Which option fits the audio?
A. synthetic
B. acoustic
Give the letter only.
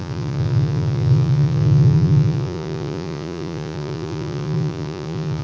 A